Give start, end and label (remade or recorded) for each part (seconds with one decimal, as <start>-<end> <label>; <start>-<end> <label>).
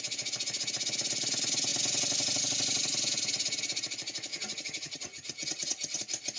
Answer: 0.0-4.3 recorded; 4.3-6.0 remade; 6.0-6.4 recorded